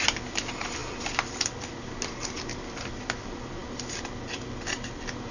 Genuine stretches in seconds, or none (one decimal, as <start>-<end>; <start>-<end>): 0.0-5.3

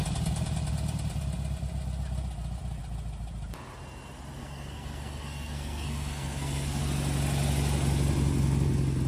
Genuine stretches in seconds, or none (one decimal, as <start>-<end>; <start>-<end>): 0.0-4.4; 6.8-9.1

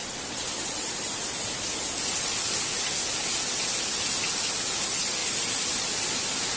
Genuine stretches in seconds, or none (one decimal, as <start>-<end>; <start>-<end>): 0.0-6.6

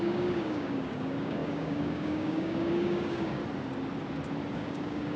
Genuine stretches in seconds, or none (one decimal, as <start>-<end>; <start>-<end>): 3.4-4.5

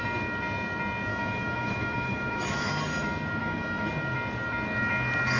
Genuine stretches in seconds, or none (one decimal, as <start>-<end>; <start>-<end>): 0.0-1.1; 2.7-3.4; 3.9-5.4

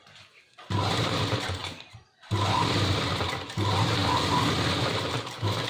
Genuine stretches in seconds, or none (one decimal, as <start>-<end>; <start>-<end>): 0.0-5.7

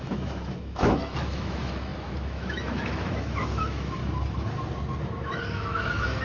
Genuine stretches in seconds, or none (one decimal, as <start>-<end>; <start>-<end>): 4.0-5.0

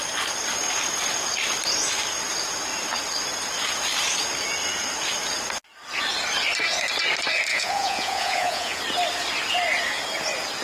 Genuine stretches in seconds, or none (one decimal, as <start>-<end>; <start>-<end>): 0.0-7.5; 8.8-10.6